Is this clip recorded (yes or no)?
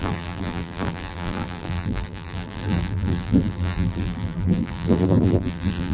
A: no